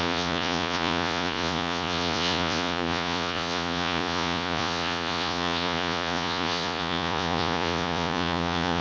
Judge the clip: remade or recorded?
remade